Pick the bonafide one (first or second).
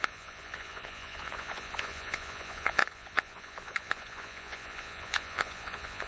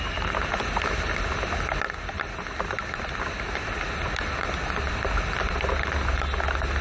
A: second